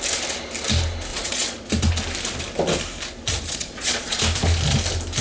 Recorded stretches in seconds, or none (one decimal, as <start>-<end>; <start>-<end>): 0.0-1.1; 1.7-3.3; 4.2-5.2